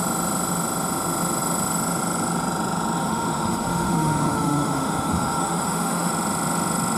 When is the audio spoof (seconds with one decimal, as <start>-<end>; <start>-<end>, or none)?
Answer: 3.0-6.1